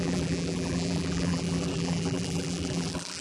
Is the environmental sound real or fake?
fake